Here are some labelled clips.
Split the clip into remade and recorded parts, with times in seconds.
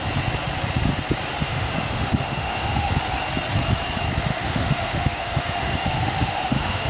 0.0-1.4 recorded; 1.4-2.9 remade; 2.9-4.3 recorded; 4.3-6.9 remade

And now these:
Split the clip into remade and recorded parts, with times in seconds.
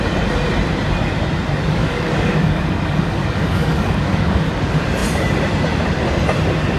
0.0-1.7 recorded; 1.7-4.5 remade; 4.5-6.8 recorded